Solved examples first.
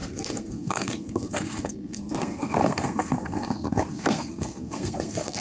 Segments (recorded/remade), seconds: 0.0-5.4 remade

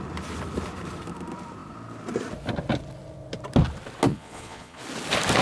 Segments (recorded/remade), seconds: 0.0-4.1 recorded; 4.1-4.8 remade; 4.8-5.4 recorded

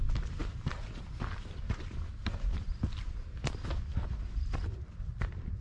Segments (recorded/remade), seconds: 0.0-5.6 remade

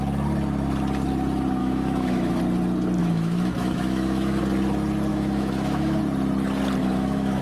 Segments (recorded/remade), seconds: 0.0-1.6 recorded; 1.6-2.4 remade; 2.4-3.0 recorded; 3.0-4.4 remade; 4.4-5.1 recorded; 5.1-6.0 remade; 6.0-6.8 recorded; 6.8-7.4 remade

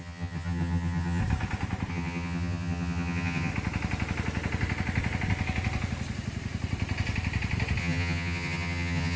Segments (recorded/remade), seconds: 0.0-1.2 remade; 1.2-1.9 recorded; 1.9-3.5 remade; 3.5-7.8 recorded; 7.8-9.2 remade

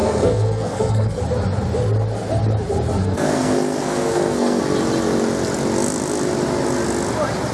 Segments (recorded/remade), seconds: 0.0-1.2 remade; 1.2-3.0 recorded; 3.0-4.6 remade; 4.6-7.5 recorded

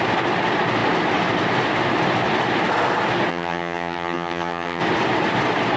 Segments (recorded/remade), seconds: 0.0-3.3 recorded; 3.3-4.8 remade; 4.8-5.8 recorded